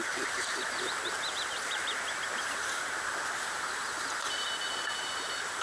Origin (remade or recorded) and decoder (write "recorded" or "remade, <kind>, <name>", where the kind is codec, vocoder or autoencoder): recorded